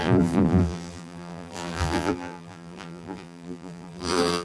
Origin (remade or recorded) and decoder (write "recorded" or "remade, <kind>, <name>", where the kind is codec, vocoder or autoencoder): remade, vocoder, BigVGAN v2